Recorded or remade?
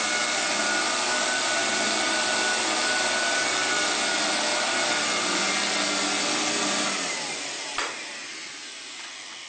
recorded